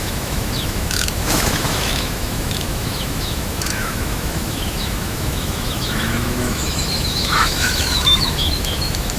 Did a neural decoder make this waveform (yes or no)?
yes